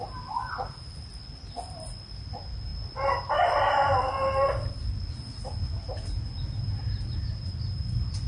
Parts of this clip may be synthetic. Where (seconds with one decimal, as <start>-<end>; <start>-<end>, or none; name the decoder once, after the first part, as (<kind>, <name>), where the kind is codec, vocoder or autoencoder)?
3.9-4.5 (vocoder, BigVGAN v2)